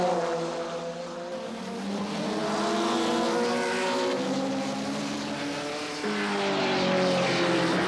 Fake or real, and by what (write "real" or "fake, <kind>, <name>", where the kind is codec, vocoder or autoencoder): real